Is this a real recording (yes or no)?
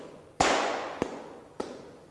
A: no